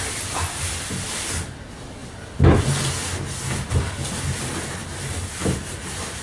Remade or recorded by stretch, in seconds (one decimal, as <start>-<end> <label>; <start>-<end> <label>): 0.0-6.2 recorded